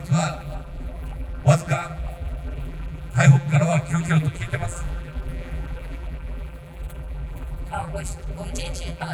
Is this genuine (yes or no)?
no